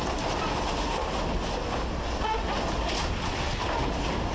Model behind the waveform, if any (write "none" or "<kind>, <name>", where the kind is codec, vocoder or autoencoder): none